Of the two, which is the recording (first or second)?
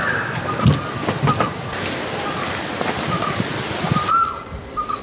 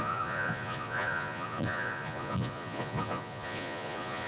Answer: first